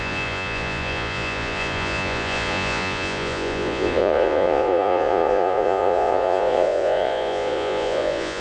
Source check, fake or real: fake